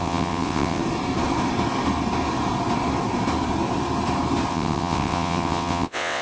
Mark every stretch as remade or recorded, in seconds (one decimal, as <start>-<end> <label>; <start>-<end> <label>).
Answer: 0.0-0.8 remade; 0.8-4.5 recorded; 4.5-6.2 remade